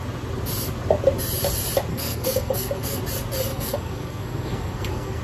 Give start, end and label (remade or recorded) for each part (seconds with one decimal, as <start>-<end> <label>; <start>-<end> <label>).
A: 0.0-1.9 recorded; 1.9-3.0 remade; 3.0-3.5 recorded; 3.5-5.2 remade

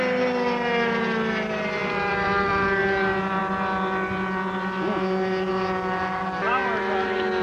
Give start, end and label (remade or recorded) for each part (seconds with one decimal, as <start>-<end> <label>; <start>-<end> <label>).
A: 0.0-1.8 recorded; 1.8-2.5 remade; 2.5-7.4 recorded

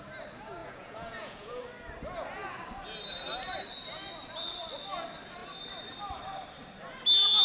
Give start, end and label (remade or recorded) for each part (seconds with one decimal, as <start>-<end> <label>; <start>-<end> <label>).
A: 0.0-0.6 recorded; 0.6-1.6 remade; 1.6-7.4 recorded

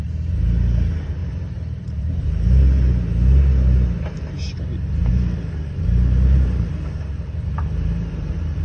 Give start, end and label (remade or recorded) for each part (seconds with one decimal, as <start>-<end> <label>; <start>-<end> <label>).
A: 0.0-1.2 recorded; 1.2-2.9 remade; 2.9-5.1 recorded; 5.1-8.6 remade

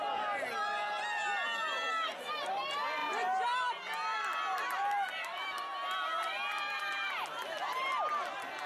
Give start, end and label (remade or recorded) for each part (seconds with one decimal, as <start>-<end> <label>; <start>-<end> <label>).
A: 0.0-8.7 recorded

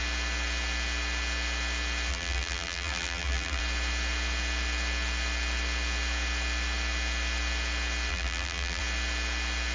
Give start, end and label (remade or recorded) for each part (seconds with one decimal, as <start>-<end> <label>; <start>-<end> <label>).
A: 0.0-2.1 recorded; 2.1-3.6 remade; 3.6-8.1 recorded; 8.1-8.8 remade; 8.8-9.7 recorded

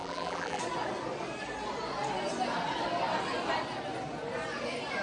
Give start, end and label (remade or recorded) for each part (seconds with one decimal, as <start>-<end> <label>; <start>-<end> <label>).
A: 0.0-0.6 remade; 0.6-5.0 recorded

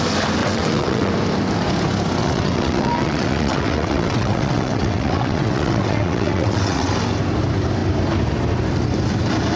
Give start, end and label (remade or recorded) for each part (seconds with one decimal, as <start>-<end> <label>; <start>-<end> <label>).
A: 0.0-0.4 recorded; 0.4-1.1 remade; 1.1-2.2 recorded; 2.2-6.9 remade; 6.9-9.6 recorded